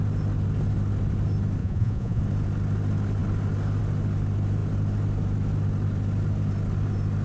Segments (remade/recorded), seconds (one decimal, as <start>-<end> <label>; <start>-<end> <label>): 0.0-1.6 recorded; 1.6-2.2 remade; 2.2-7.2 recorded